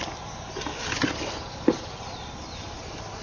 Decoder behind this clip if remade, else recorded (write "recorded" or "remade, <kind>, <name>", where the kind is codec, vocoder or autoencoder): recorded